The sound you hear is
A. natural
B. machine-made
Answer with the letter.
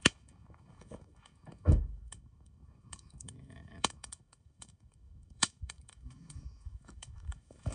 B